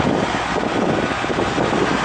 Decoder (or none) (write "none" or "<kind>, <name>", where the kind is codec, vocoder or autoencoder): none